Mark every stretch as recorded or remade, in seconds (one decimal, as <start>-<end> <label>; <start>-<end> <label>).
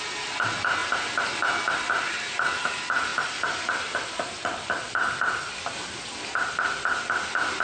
0.0-7.6 recorded